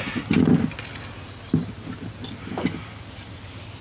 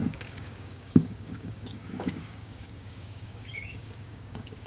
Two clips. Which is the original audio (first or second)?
first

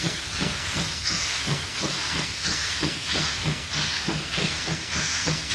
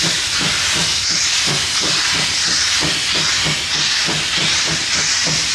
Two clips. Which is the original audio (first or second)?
second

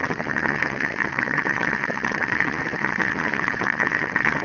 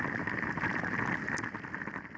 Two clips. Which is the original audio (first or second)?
second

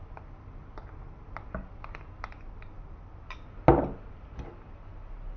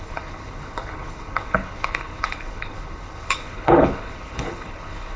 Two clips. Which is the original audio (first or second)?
first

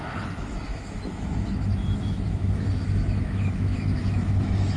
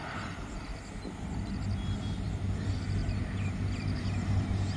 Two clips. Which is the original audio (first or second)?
second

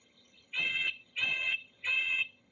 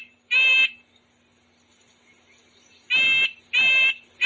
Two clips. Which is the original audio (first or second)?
second